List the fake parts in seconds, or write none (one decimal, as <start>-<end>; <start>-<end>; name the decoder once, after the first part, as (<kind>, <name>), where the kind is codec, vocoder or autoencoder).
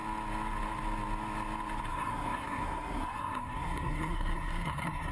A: 1.9-5.1 (codec, SNAC)